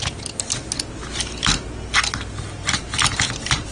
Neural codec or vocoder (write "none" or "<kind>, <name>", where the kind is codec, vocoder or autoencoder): none